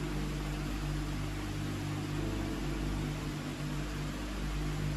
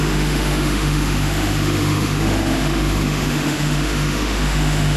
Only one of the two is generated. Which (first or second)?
second